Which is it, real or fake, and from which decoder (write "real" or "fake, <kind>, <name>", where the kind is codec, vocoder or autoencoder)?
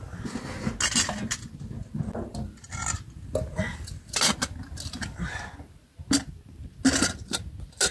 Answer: real